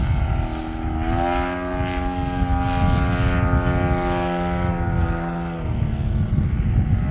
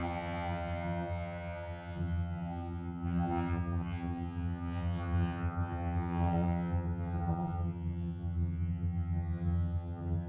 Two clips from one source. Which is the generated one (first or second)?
second